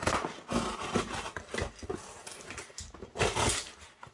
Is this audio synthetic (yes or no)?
no